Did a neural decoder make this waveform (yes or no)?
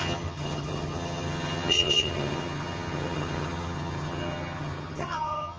yes